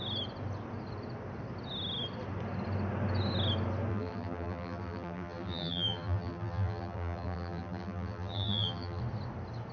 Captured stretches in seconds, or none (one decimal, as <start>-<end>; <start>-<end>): 0.0-3.9; 9.0-9.7